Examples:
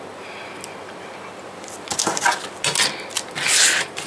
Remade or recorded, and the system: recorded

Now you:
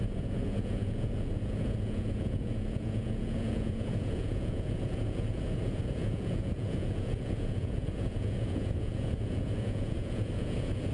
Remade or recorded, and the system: remade, vocoder, Vocos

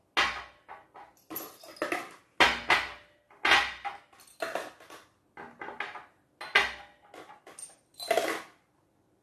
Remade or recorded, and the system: recorded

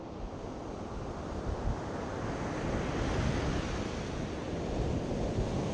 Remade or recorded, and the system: recorded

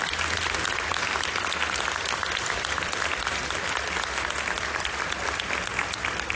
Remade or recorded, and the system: recorded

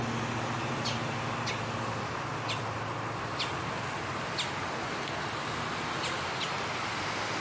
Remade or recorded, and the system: recorded